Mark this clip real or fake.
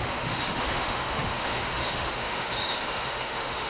fake